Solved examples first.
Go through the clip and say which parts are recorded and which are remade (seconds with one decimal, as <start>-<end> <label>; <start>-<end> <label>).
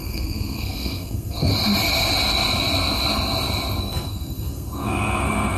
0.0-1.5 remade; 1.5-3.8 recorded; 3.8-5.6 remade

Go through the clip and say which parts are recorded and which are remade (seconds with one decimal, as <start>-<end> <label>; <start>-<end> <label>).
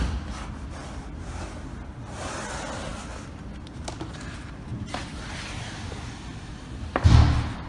0.0-7.7 recorded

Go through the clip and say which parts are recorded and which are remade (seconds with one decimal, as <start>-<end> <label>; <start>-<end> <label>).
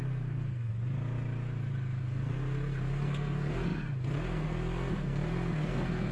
0.0-0.7 remade; 0.7-2.0 recorded; 2.0-6.1 remade